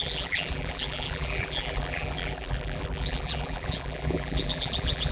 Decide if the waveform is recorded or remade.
remade